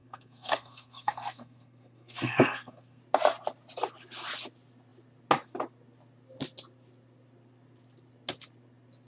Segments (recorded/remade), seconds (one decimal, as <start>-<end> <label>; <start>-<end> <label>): 0.0-3.0 remade; 3.0-9.1 recorded